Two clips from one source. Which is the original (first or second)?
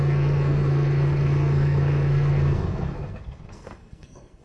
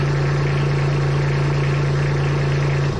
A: second